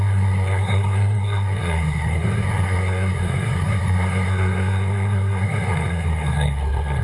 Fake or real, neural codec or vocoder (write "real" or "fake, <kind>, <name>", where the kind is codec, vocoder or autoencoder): fake, codec, SNAC